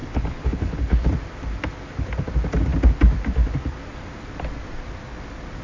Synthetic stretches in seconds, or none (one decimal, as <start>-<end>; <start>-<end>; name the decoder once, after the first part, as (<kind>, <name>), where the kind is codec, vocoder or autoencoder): 0.0-1.1 (codec, HILCodec)